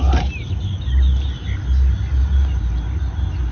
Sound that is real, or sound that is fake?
real